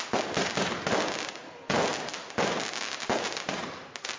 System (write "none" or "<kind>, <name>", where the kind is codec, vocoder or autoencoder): none